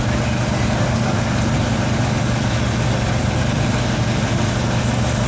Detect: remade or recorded recorded